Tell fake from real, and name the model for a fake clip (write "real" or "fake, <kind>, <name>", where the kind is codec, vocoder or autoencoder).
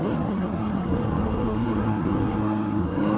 fake, codec, SNAC